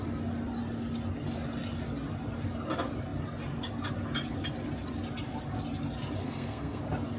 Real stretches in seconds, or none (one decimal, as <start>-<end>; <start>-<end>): 0.0-6.2; 6.8-7.2